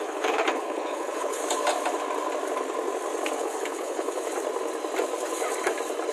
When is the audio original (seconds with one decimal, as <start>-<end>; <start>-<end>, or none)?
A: 1.4-3.4; 4.3-6.1